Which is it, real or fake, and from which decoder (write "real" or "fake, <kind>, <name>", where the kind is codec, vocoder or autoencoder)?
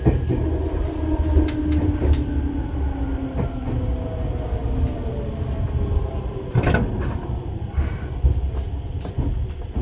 real